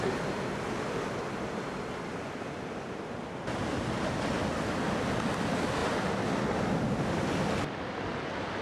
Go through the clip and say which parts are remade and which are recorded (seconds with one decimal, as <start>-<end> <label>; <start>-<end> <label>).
0.0-8.6 recorded